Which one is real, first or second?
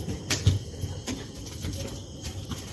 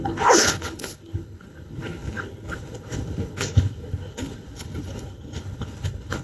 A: first